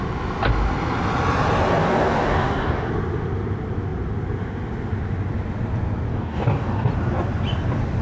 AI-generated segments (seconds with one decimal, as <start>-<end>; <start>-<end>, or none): 1.8-2.9; 6.1-6.9